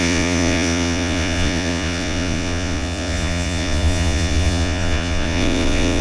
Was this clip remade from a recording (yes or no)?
yes